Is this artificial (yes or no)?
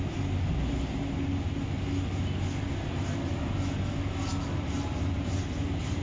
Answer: no